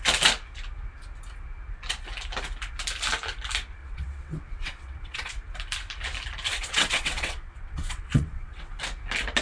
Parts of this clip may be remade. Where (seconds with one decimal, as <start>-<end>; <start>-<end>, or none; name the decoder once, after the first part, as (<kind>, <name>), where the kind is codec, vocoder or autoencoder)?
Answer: 3.8-5.3 (vocoder, WaveNeXt); 6.5-8.8